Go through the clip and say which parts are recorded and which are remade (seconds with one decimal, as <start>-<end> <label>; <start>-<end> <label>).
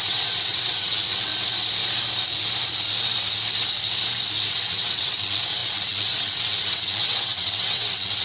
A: 0.0-1.3 remade; 1.3-4.5 recorded; 4.5-8.2 remade